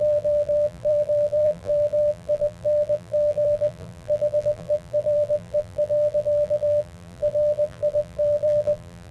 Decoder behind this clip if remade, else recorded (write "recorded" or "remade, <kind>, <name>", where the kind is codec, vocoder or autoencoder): remade, vocoder, BigVGAN v2